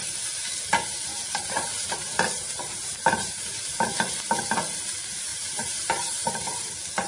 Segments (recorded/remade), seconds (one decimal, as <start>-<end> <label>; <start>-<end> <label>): 0.0-1.1 recorded; 1.1-3.6 remade; 3.6-5.3 recorded; 5.3-6.3 remade; 6.3-7.1 recorded